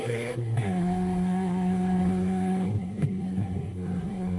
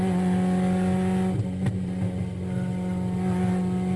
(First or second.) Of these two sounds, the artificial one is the first